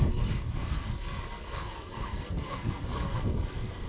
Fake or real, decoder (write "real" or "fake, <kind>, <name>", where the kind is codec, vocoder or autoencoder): fake, codec, SNAC